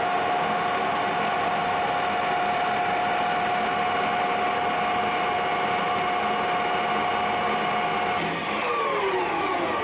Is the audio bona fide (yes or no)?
yes